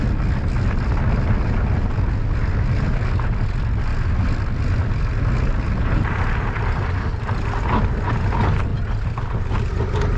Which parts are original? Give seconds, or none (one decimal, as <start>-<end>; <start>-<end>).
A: 0.0-10.2